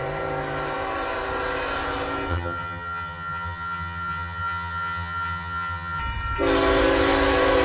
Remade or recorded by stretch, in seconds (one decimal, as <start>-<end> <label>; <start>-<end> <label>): 0.0-2.3 recorded; 2.3-6.0 remade; 6.0-7.6 recorded